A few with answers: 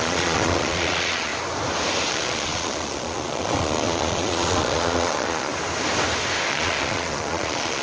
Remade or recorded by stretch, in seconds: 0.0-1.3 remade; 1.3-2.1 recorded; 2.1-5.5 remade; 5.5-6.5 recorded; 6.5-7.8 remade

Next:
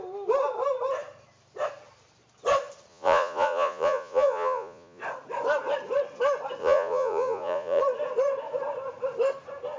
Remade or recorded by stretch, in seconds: 0.0-2.9 recorded; 2.9-5.0 remade; 5.0-6.6 recorded; 6.6-7.8 remade; 7.8-9.8 recorded